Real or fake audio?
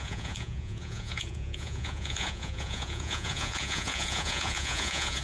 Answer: fake